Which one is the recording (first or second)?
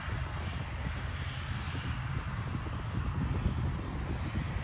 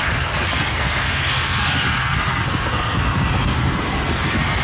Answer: first